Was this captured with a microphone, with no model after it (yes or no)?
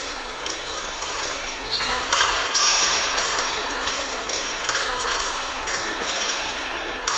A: no